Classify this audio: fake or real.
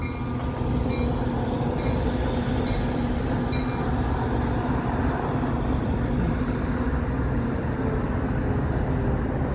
real